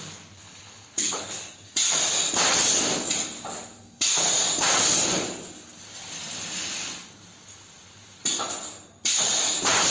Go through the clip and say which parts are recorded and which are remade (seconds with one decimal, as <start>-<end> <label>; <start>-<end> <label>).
0.0-0.4 recorded; 0.4-1.3 remade; 1.3-9.9 recorded